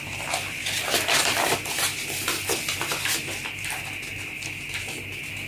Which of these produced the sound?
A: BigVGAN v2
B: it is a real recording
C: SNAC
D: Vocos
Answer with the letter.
B